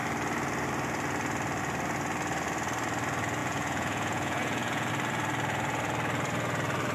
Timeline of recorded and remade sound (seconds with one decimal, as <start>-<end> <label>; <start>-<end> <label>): 0.0-3.4 recorded; 3.4-4.9 remade; 4.9-6.9 recorded